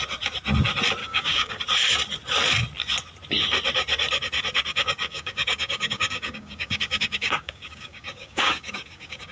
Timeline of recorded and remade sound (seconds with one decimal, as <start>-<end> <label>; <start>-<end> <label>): 0.0-1.0 recorded; 1.0-1.6 remade; 1.6-4.7 recorded; 4.7-9.3 remade